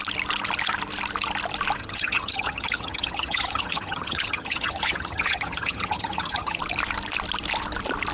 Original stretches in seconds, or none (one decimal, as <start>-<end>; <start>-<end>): 0.0-1.8; 6.6-8.1